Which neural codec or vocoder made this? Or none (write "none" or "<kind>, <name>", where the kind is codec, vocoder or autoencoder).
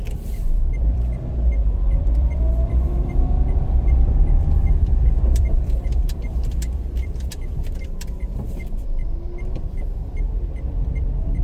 vocoder, BigVGAN v2